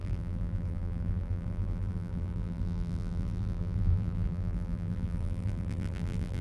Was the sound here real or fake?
fake